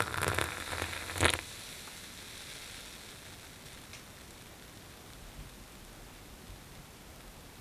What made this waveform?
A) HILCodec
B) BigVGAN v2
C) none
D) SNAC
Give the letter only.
C